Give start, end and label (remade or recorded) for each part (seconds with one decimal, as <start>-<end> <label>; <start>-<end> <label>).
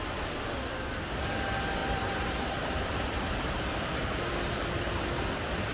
0.0-5.7 recorded